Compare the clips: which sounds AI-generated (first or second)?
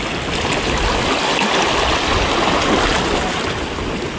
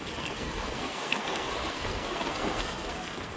second